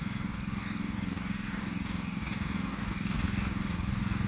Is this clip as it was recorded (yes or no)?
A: no